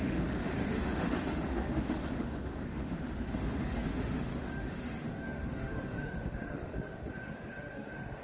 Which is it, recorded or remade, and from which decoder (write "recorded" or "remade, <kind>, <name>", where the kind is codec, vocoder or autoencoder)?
remade, autoencoder, DAC-VAE